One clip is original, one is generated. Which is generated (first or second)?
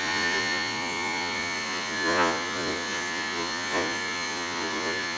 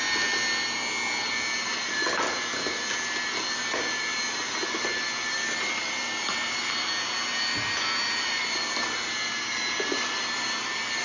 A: first